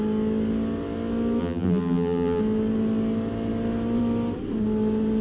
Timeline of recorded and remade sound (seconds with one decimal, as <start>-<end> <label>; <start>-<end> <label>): 0.0-1.4 recorded; 1.4-2.4 remade; 2.4-5.2 recorded